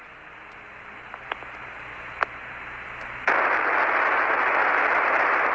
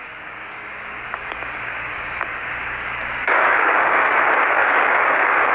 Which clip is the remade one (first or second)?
second